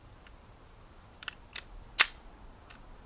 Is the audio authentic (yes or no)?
yes